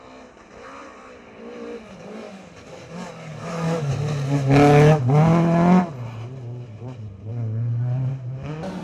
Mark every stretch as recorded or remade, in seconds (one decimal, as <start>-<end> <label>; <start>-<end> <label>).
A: 0.0-2.0 recorded; 2.0-3.9 remade; 3.9-8.8 recorded